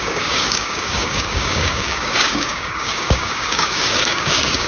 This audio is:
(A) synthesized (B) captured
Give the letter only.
A